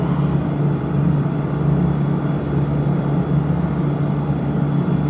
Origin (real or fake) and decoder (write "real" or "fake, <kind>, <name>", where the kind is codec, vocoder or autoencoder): real